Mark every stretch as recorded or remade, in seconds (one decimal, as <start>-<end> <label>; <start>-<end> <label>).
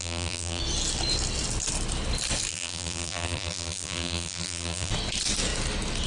0.0-0.6 remade; 0.6-2.5 recorded; 2.5-4.9 remade; 4.9-6.1 recorded